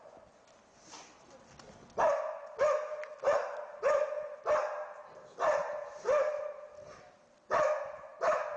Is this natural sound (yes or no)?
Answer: yes